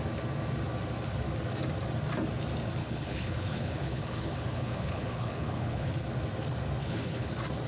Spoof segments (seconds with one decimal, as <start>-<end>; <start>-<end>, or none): 2.8-5.9; 6.8-7.3